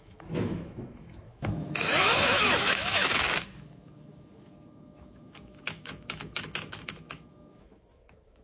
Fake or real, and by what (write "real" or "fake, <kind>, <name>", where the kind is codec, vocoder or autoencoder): fake, autoencoder, DAC-VAE